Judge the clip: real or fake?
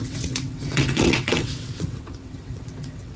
fake